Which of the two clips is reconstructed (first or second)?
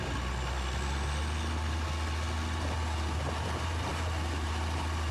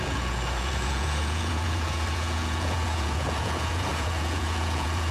second